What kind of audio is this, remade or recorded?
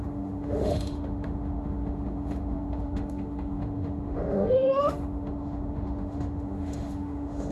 remade